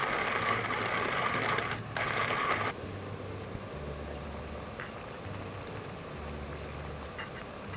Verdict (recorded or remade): recorded